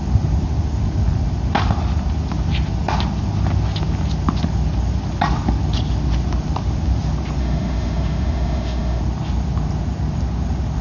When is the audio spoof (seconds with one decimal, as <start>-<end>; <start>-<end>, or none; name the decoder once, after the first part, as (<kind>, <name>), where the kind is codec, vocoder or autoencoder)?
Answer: 7.4-9.0 (autoencoder, DAC-VAE)